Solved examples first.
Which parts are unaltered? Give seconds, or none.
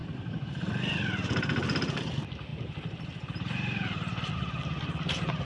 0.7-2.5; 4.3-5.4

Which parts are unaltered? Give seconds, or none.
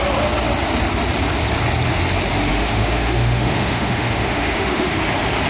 0.0-2.5; 5.0-5.5